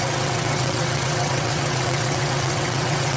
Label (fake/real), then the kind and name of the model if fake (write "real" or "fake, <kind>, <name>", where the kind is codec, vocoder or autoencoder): fake, vocoder, WaveNeXt